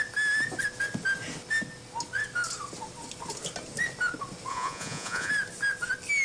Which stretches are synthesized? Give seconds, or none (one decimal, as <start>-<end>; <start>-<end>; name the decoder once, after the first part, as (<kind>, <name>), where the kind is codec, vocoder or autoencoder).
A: 4.5-5.3 (vocoder, Vocos)